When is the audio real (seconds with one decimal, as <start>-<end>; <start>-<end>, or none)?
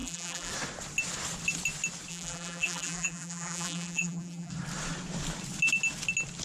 0.5-2.1; 4.5-6.4